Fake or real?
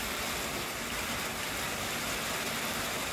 real